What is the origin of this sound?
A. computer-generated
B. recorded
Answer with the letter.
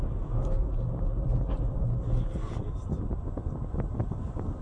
B